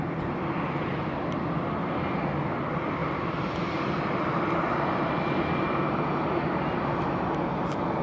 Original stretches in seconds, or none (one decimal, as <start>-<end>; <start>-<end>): 0.0-8.0